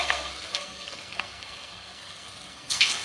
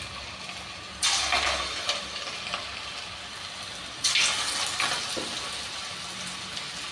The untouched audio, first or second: second